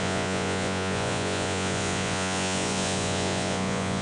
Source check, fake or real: fake